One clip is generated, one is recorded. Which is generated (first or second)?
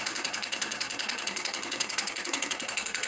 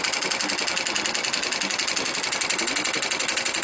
first